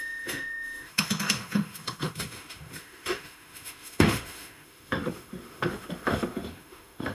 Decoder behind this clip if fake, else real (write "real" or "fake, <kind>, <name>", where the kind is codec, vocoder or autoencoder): fake, autoencoder, DAC-VAE